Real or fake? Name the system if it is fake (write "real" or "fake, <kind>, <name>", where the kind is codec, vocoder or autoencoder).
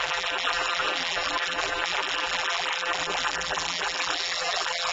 fake, vocoder, BigVGAN v2